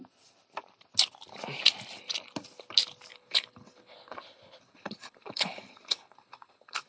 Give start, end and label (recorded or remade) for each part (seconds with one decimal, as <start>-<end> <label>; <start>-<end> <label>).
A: 0.0-3.1 recorded; 3.1-6.9 remade